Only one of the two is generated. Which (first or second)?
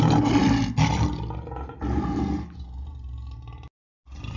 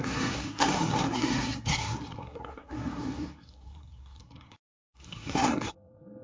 second